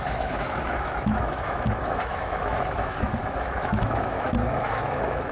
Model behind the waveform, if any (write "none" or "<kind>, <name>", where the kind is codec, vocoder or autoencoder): autoencoder, DAC-VAE